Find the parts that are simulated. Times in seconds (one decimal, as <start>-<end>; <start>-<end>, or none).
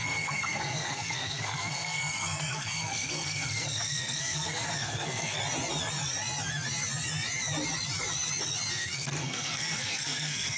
0.0-5.4; 8.7-10.6